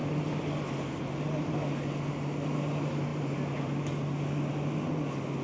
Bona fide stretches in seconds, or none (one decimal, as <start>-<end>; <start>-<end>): 0.0-3.1; 3.9-5.4